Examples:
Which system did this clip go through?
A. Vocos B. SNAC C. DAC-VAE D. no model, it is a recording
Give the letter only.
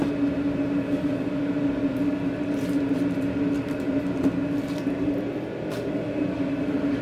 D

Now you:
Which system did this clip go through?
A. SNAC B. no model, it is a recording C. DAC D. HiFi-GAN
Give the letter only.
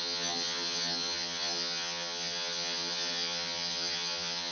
D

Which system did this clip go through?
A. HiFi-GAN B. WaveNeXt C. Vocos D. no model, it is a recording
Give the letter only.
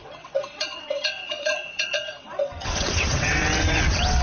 B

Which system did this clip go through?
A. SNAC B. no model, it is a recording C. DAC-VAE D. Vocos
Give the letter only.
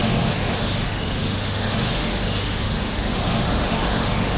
C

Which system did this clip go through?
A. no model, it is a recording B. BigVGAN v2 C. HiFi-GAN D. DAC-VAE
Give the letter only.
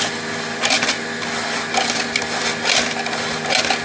A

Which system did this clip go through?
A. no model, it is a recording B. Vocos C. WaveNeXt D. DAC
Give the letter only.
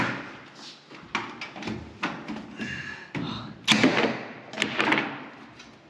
A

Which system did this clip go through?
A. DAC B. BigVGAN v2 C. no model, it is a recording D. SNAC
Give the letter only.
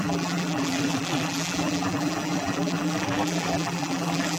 B